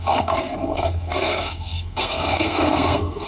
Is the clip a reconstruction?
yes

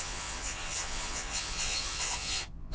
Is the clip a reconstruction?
yes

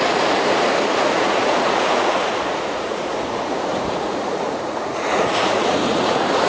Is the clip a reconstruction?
yes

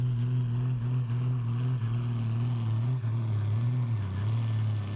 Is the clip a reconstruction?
no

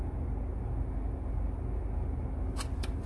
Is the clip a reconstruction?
no